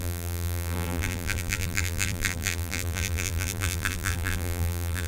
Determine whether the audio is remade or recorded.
remade